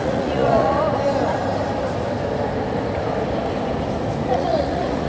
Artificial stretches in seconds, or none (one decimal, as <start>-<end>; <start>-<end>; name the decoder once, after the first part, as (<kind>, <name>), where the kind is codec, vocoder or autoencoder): 0.0-0.8 (vocoder, Vocos); 4.3-5.1